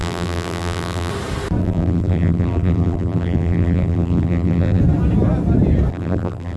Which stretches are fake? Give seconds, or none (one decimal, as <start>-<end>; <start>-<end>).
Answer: 0.0-1.1; 1.6-4.8; 5.9-6.6